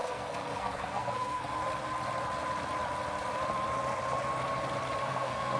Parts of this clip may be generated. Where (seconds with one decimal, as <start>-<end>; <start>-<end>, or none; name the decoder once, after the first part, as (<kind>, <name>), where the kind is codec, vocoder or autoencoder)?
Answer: 0.0-1.6 (codec, SNAC); 5.0-5.6